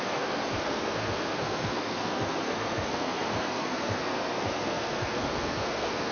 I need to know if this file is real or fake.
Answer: fake